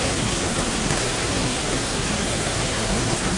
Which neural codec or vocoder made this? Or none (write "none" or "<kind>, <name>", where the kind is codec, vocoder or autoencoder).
codec, SNAC